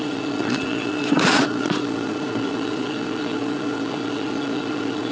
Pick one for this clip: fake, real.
fake